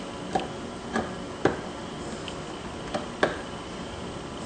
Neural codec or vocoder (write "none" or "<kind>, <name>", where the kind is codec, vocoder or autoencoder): none